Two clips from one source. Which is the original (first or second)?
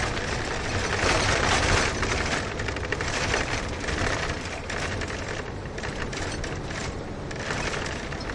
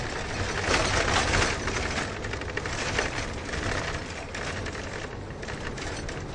second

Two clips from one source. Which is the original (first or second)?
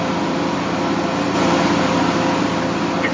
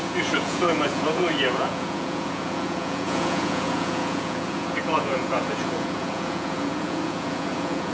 first